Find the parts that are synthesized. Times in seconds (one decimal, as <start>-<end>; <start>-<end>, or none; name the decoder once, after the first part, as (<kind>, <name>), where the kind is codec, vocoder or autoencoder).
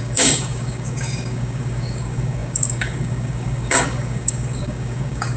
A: 0.0-5.4 (codec, DAC)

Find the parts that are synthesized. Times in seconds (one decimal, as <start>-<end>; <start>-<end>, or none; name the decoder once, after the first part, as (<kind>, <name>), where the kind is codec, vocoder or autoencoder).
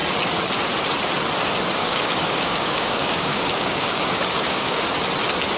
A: 1.8-4.8 (codec, DAC)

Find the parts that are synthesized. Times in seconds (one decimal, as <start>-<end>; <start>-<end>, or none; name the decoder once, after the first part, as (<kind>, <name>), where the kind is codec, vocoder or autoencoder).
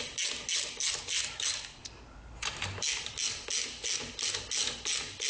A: none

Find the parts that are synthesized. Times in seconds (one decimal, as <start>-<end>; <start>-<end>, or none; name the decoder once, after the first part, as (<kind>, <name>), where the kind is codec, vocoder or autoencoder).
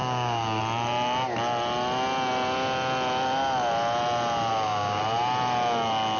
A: 0.0-0.6 (codec, DAC); 4.5-5.0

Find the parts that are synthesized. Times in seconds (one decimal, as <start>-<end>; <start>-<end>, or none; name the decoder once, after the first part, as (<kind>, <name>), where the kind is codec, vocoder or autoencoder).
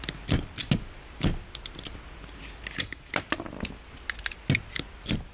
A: none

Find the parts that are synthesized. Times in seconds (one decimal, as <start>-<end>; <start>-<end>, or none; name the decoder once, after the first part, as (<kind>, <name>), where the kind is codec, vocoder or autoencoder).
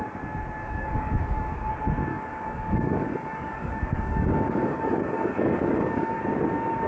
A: 0.6-1.7 (codec, DAC); 2.1-6.2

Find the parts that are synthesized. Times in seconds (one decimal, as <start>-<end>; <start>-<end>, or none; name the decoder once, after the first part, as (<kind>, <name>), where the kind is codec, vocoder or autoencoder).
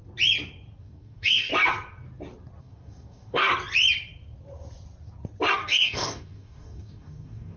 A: 0.8-1.5 (codec, DAC); 2.6-3.5; 5.5-7.6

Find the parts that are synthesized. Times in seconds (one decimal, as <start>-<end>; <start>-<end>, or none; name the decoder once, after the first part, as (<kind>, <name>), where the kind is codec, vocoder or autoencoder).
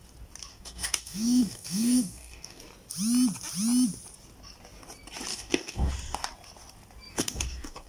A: 0.5-2.6 (codec, DAC); 5.3-5.9; 7.1-7.9